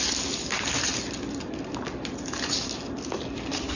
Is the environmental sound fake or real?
real